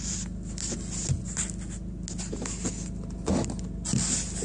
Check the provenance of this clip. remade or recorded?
recorded